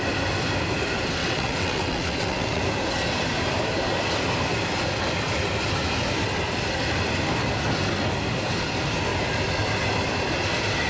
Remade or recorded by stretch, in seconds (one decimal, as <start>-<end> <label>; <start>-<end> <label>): 0.0-1.2 recorded; 1.2-2.6 remade; 2.6-10.9 recorded